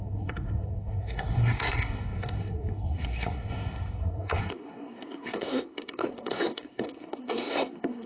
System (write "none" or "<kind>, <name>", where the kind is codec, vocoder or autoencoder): codec, SNAC